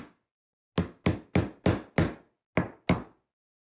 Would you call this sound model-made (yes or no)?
no